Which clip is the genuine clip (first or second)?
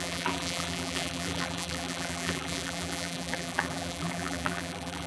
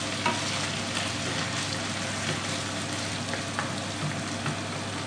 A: second